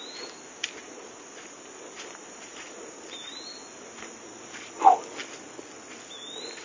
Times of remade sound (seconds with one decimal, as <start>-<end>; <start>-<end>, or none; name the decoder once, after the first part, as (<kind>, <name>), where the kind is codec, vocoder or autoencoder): 0.8-4.8 (vocoder, BigVGAN v2)